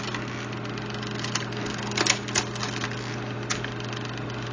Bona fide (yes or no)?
yes